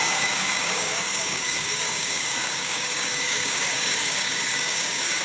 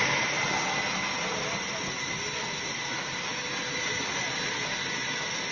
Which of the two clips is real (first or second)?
second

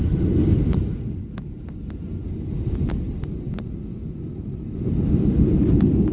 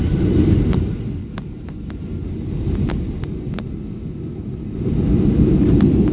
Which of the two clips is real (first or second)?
second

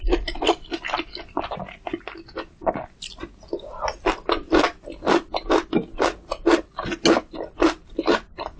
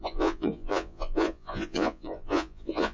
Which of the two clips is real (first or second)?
first